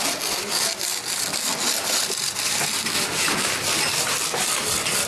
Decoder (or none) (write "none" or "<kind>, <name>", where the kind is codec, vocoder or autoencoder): none